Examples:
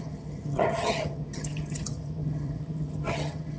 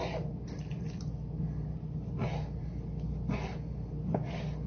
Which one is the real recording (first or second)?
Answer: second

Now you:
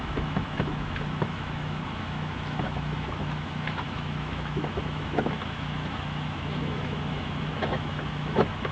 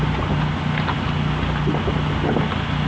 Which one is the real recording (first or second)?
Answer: second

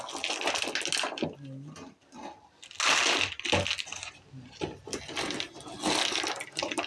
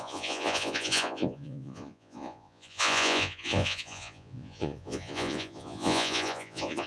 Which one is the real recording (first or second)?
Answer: first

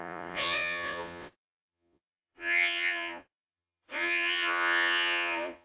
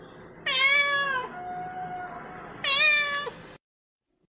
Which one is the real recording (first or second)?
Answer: second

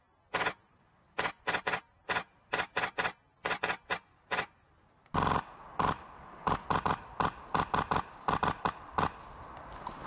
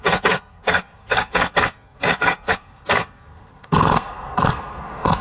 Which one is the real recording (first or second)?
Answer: first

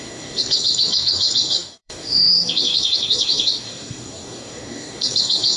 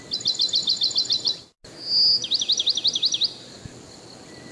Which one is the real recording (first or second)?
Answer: second